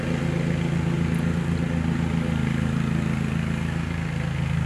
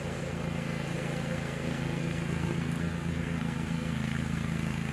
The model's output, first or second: second